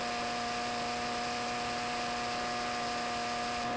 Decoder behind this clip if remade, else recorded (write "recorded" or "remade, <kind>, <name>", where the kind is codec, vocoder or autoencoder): recorded